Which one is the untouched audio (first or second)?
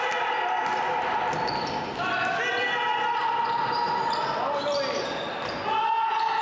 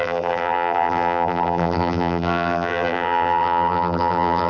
first